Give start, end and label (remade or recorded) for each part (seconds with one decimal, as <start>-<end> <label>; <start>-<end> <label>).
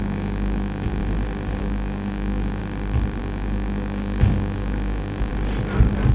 0.0-1.0 remade; 1.0-1.6 recorded; 1.6-2.6 remade; 2.6-3.2 recorded; 3.2-5.3 remade; 5.3-6.1 recorded